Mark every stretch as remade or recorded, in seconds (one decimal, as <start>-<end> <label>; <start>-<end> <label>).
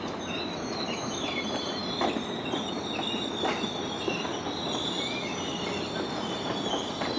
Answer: 0.0-1.8 remade; 1.8-6.1 recorded; 6.1-7.2 remade